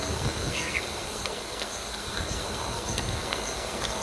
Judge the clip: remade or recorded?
remade